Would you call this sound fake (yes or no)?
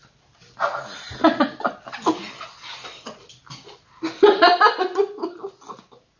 no